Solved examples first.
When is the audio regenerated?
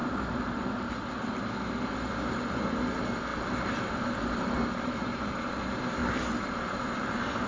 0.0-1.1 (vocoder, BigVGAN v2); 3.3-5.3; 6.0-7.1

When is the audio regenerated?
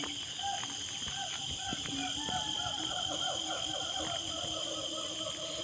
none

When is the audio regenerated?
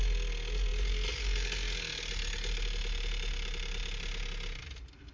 none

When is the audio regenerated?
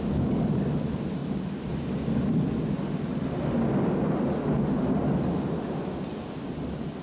1.2-1.7 (vocoder, BigVGAN v2); 3.1-3.9